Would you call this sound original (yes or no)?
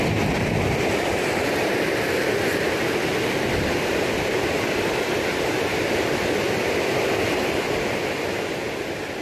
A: yes